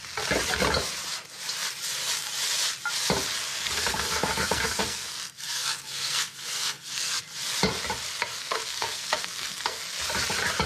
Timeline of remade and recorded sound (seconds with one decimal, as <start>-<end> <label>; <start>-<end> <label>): 0.0-3.5 recorded; 3.5-7.2 remade; 7.2-8.3 recorded; 8.3-9.8 remade; 9.8-10.7 recorded